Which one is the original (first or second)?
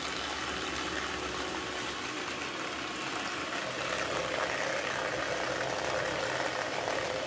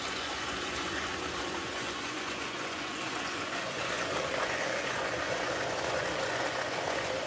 first